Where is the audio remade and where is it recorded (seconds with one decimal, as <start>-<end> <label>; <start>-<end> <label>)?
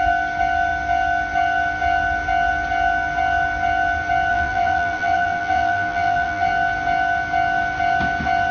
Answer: 0.0-4.3 recorded; 4.3-6.5 remade; 6.5-8.5 recorded